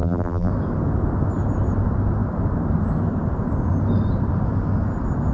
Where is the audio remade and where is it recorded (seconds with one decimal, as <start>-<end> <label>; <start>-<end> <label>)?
0.0-0.5 remade; 0.5-5.3 recorded